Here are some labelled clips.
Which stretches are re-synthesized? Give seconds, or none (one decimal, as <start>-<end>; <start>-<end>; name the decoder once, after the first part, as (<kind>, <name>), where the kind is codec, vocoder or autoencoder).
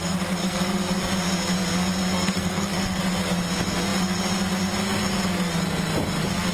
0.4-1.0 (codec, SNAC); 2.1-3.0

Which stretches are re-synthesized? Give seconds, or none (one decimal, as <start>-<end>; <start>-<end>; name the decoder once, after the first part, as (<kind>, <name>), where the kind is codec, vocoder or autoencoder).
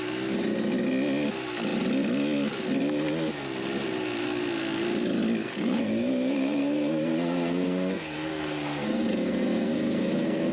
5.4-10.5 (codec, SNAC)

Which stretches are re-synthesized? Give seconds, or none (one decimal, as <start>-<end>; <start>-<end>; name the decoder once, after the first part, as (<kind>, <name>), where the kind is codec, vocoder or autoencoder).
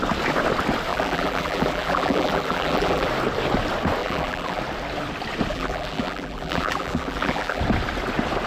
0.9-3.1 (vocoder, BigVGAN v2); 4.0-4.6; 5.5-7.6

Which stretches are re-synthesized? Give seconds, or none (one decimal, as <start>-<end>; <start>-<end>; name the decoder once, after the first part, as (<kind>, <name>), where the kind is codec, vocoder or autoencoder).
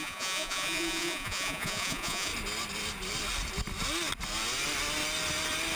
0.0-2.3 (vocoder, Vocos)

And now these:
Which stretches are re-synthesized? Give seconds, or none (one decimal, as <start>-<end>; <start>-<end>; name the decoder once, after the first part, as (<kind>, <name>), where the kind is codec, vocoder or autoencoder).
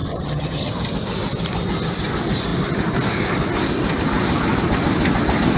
0.0-0.7 (vocoder, HiFi-GAN)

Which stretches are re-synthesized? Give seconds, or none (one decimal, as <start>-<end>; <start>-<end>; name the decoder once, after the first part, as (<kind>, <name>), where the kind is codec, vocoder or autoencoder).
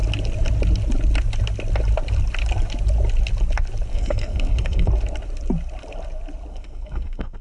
3.9-4.9 (codec, SNAC); 6.5-7.4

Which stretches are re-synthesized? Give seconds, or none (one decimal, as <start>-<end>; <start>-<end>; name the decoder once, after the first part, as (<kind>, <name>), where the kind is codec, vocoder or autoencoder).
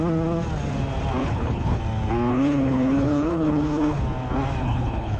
1.2-1.8 (codec, HILCodec); 2.3-4.0; 4.6-5.2